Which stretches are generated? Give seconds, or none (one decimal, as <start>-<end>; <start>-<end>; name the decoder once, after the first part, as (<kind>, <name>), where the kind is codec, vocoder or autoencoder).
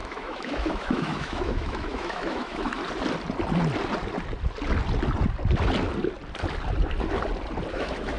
0.0-2.8 (autoencoder, DAC-VAE); 7.7-8.2